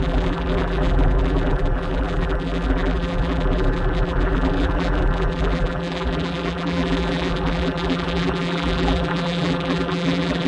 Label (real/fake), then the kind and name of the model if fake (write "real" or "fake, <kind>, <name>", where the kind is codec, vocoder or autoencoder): fake, vocoder, BigVGAN v2